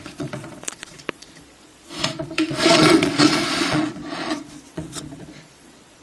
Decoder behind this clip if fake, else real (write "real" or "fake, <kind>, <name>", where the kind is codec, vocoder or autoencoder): fake, vocoder, Vocos